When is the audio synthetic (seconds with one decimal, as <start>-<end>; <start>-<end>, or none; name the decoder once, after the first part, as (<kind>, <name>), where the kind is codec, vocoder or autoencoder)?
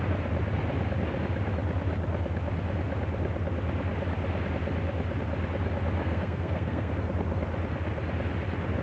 6.0-6.9 (codec, SNAC)